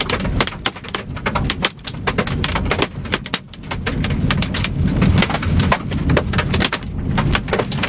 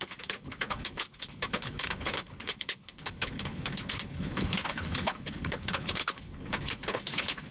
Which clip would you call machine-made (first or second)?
second